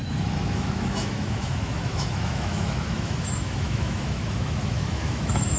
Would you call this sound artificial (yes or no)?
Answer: yes